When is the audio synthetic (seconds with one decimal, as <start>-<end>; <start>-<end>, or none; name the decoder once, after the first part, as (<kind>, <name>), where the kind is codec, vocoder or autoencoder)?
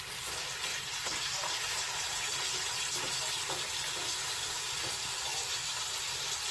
0.7-4.6 (vocoder, BigVGAN v2)